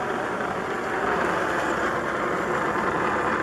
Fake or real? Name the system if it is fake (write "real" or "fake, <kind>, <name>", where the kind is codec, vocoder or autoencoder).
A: real